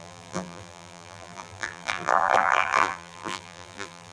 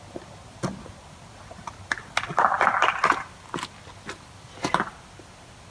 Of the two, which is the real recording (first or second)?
second